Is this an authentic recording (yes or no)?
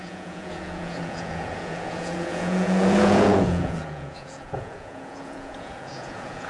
no